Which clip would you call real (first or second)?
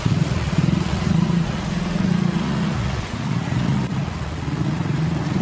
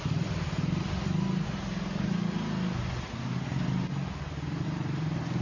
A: second